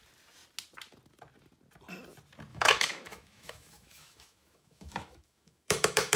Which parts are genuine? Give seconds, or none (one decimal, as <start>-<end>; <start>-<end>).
0.0-2.5